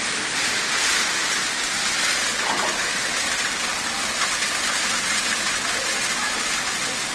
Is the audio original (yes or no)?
yes